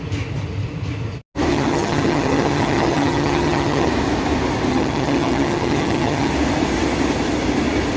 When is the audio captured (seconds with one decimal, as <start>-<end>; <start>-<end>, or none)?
0.0-1.5; 3.9-4.7; 6.3-8.0